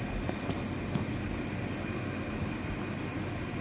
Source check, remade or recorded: recorded